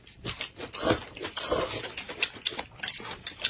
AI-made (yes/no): no